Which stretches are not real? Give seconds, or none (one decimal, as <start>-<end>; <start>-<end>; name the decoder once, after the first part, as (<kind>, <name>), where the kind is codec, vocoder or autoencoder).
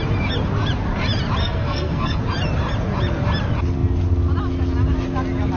1.4-2.2 (codec, SNAC)